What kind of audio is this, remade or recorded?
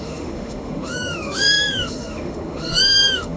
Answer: remade